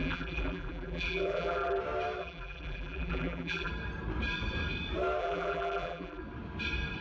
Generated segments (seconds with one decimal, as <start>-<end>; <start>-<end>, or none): 0.0-1.8; 2.2-3.7; 5.2-6.2